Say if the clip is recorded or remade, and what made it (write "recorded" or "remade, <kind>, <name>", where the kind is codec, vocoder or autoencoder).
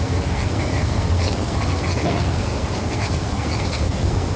remade, codec, SNAC